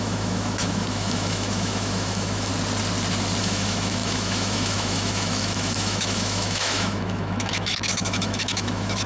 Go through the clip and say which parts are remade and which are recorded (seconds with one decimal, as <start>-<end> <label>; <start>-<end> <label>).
0.0-2.5 remade; 2.5-3.4 recorded; 3.4-9.1 remade